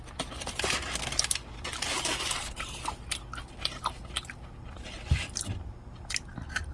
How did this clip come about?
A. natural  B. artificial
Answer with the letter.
A